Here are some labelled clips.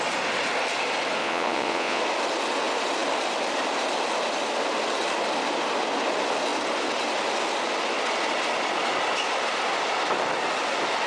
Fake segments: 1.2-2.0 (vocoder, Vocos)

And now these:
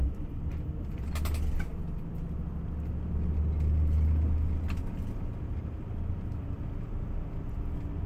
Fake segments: none

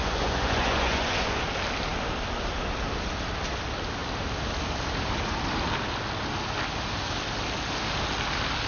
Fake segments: 0.0-1.4 (vocoder, Vocos)